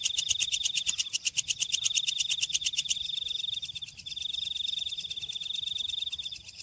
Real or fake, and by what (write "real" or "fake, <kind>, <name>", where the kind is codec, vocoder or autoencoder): real